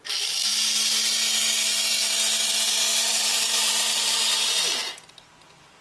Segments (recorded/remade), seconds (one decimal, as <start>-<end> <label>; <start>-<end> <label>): 0.0-2.9 recorded; 2.9-3.7 remade; 3.7-5.8 recorded